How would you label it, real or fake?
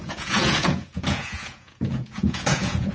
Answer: fake